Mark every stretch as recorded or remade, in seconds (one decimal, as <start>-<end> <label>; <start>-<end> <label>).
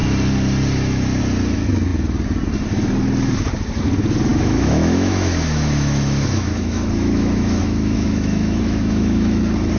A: 0.0-4.3 recorded; 4.3-9.4 remade; 9.4-9.8 recorded